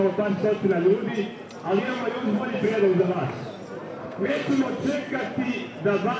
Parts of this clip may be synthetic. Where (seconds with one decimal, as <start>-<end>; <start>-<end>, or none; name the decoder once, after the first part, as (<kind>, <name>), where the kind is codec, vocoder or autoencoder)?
4.0-4.5 (codec, SNAC)